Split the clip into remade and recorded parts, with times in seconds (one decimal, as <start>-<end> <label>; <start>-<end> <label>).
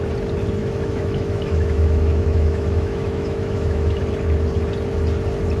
0.0-0.6 recorded; 0.6-4.0 remade; 4.0-5.6 recorded